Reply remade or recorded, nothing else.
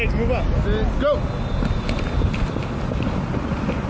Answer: recorded